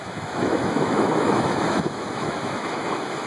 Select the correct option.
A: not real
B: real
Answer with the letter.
A